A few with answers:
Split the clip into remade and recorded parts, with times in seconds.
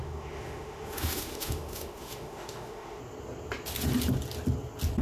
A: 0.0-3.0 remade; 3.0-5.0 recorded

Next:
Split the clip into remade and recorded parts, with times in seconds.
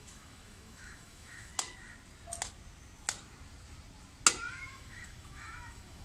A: 0.0-1.5 remade; 1.5-4.5 recorded; 4.5-6.0 remade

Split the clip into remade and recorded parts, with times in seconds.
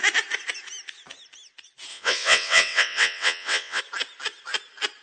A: 0.0-1.9 recorded; 1.9-3.8 remade; 3.8-5.0 recorded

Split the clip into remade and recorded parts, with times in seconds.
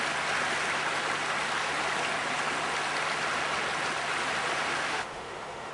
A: 0.0-4.8 recorded; 4.8-5.7 remade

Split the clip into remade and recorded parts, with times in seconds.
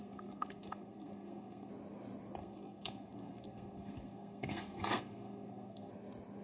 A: 0.0-1.7 remade; 1.7-2.4 recorded; 2.4-5.9 remade; 5.9-6.4 recorded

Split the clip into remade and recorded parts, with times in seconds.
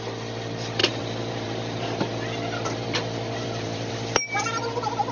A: 0.0-0.8 recorded; 0.8-3.9 remade; 3.9-5.1 recorded